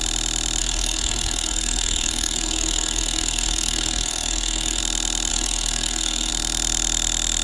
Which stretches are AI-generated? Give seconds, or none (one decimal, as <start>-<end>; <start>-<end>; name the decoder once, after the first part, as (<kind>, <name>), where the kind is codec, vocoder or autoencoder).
0.6-4.8 (codec, SNAC); 5.3-6.3

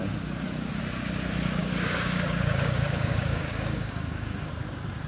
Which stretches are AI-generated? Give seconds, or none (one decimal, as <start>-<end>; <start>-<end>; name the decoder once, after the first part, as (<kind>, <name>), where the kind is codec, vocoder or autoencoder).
1.6-4.5 (codec, DAC)

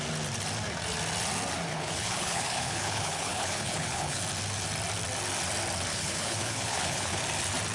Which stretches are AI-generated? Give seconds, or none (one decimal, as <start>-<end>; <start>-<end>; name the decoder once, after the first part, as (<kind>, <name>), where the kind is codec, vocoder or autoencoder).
1.7-4.2 (codec, HILCodec); 5.9-7.2

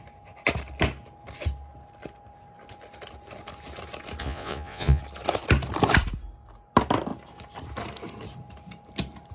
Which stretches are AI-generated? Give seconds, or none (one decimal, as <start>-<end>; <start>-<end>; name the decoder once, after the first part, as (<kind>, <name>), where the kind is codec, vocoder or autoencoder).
4.2-5.0 (vocoder, Vocos)